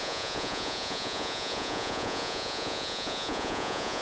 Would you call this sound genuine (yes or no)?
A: no